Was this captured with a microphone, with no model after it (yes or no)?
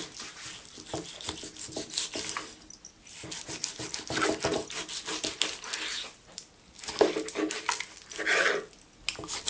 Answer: yes